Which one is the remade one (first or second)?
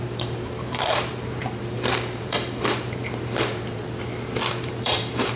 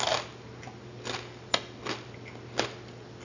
first